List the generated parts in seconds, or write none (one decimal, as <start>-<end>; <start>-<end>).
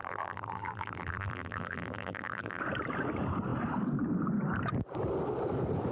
0.0-2.6